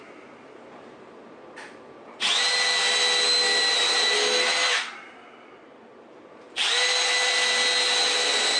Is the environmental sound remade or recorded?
recorded